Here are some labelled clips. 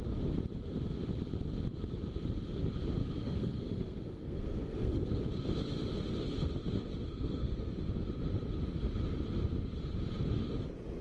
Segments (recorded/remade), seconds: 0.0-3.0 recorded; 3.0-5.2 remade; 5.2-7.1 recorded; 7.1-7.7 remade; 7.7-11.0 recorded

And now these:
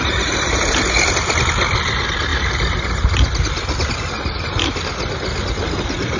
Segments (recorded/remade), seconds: 0.0-6.2 recorded

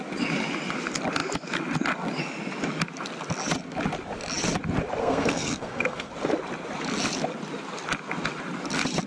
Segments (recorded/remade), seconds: 0.0-5.0 recorded; 5.0-6.1 remade; 6.1-9.1 recorded

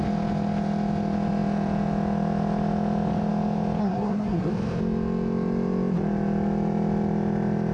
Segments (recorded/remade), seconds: 0.0-3.8 recorded; 3.8-4.5 remade; 4.5-7.7 recorded

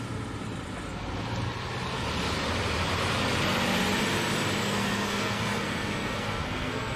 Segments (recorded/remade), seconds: 0.0-4.6 recorded; 4.6-7.0 remade

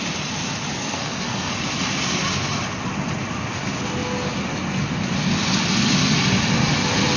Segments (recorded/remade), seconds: 0.0-0.8 recorded; 0.8-1.5 remade; 1.5-7.2 recorded

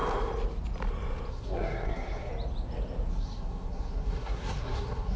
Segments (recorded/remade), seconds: 0.0-1.3 recorded; 1.3-2.3 remade; 2.3-3.1 recorded; 3.1-5.2 remade